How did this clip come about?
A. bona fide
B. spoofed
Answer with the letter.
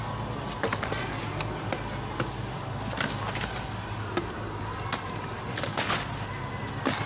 A